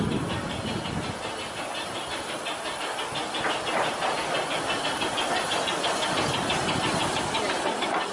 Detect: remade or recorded recorded